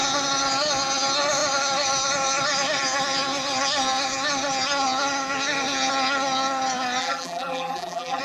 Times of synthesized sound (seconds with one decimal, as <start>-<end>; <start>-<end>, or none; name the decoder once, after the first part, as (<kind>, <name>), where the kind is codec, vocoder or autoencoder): 7.0-8.2 (vocoder, BigVGAN v2)